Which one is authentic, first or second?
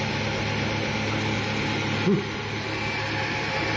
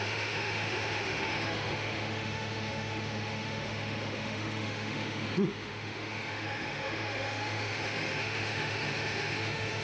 first